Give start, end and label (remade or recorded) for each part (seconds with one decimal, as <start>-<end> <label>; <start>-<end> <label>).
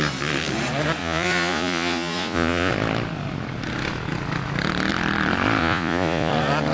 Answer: 0.0-1.0 recorded; 1.0-2.7 remade; 2.7-5.6 recorded; 5.6-6.3 remade; 6.3-6.7 recorded